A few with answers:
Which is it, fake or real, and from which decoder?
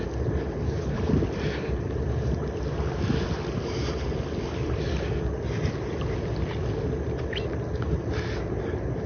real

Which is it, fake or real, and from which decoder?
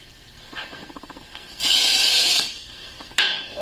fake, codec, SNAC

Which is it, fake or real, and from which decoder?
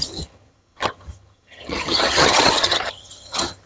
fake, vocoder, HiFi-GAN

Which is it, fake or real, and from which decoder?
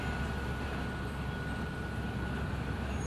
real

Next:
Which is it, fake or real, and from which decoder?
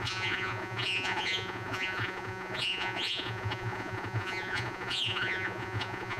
fake, vocoder, Vocos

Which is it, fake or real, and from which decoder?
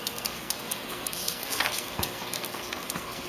fake, codec, SNAC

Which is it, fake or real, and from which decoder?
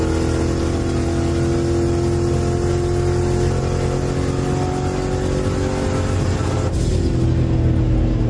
real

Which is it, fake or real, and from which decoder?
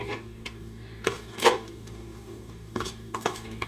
fake, codec, DAC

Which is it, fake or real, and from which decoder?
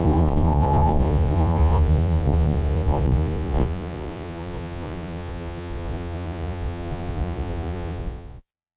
fake, vocoder, Vocos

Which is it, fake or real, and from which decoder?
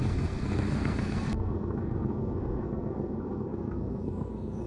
fake, codec, SNAC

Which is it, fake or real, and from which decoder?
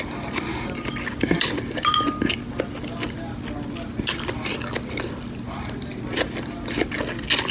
real